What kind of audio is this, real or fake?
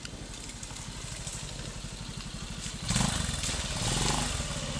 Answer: real